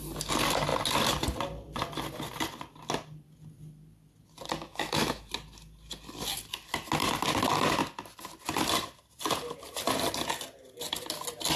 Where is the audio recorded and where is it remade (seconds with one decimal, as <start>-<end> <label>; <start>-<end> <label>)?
0.0-4.7 recorded; 4.7-5.3 remade; 5.3-11.6 recorded